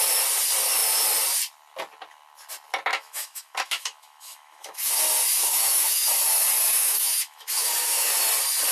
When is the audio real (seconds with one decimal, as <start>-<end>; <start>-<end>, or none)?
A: 0.0-2.9; 4.9-5.4; 6.1-6.7; 8.1-8.7